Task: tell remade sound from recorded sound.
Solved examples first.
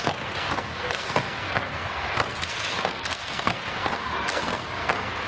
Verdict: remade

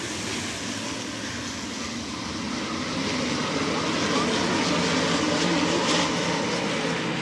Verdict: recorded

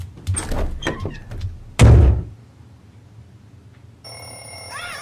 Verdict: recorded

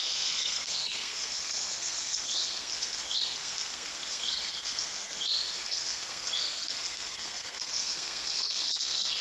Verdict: remade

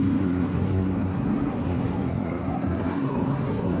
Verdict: remade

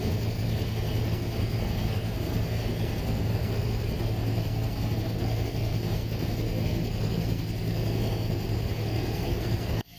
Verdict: remade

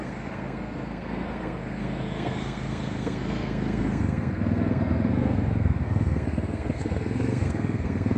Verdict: remade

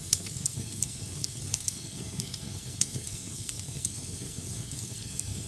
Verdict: remade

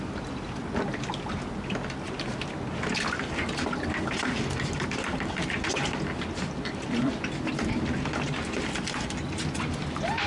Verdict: recorded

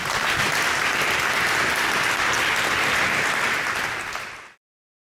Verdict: recorded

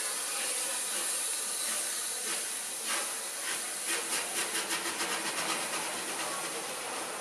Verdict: recorded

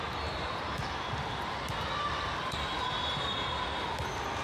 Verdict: recorded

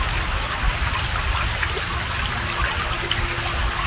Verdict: recorded